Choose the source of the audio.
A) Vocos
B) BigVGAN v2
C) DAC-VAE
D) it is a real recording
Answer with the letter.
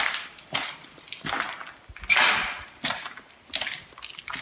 D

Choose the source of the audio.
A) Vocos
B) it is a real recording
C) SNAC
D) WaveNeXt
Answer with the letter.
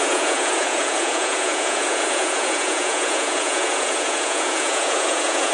A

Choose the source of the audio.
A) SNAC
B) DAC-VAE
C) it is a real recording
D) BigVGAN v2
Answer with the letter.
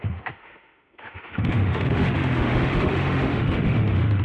B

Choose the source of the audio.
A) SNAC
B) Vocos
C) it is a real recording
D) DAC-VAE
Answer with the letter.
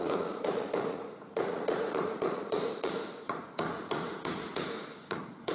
B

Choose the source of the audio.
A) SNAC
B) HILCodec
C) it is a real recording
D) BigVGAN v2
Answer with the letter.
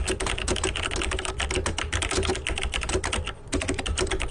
C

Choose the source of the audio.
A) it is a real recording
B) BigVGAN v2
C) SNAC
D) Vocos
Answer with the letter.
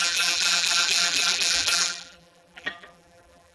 B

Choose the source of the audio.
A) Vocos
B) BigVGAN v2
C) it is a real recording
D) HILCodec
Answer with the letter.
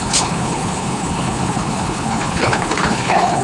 D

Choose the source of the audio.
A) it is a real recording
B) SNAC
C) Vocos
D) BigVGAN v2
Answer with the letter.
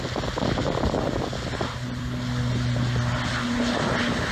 A